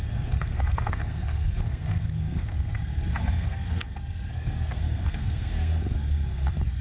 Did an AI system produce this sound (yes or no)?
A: yes